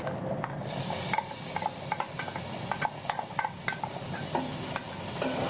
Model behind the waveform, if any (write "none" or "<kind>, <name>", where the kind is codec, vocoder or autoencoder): none